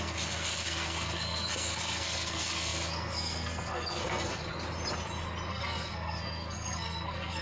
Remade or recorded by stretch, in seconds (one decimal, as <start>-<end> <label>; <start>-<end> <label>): 0.0-4.4 remade; 4.4-5.5 recorded; 5.5-7.4 remade